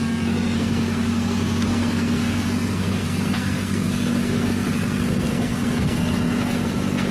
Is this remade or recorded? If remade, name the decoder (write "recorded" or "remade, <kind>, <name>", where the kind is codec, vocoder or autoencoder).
remade, codec, SNAC